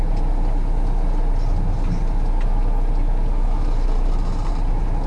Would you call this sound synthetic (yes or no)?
no